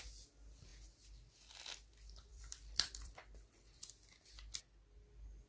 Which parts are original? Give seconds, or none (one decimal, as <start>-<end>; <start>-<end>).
0.0-2.3; 3.8-5.5